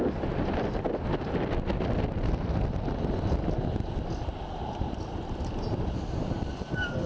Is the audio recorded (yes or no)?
yes